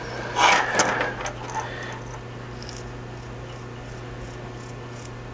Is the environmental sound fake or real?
real